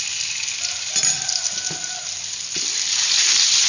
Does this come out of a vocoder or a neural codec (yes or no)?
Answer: no